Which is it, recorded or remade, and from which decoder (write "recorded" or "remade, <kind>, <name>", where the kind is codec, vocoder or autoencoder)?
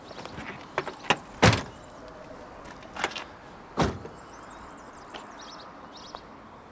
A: recorded